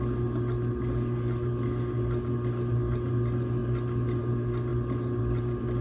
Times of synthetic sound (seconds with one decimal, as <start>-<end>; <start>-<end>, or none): none